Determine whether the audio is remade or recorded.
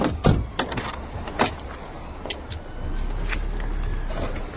recorded